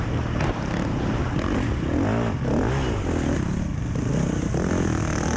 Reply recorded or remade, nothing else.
recorded